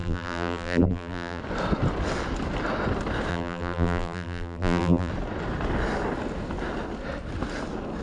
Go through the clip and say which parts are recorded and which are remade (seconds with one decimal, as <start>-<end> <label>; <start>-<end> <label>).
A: 0.0-1.4 remade; 1.4-3.3 recorded; 3.3-5.1 remade; 5.1-8.0 recorded

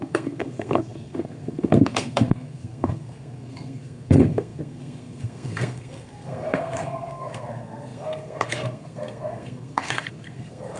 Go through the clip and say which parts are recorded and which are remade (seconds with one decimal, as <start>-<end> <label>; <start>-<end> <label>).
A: 0.0-10.8 remade

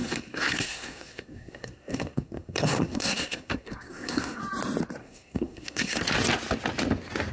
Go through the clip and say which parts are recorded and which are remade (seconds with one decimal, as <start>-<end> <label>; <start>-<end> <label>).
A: 0.0-4.4 remade; 4.4-5.0 recorded; 5.0-6.0 remade; 6.0-7.3 recorded

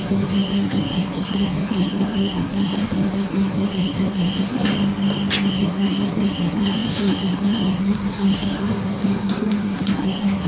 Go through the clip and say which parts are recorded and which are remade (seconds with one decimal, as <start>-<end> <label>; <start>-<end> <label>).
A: 0.0-4.7 remade; 4.7-5.5 recorded; 5.5-10.5 remade

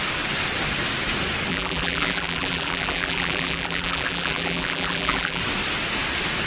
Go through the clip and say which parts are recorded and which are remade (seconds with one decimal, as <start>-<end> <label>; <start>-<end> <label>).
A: 0.0-1.5 recorded; 1.5-5.4 remade; 5.4-6.5 recorded

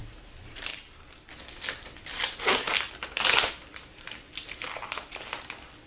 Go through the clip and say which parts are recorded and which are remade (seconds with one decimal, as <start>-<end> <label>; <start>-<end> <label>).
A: 0.0-0.7 remade; 0.7-1.3 recorded; 1.3-5.9 remade